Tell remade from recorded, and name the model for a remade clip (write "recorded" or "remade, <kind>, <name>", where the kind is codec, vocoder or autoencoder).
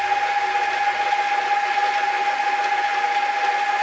recorded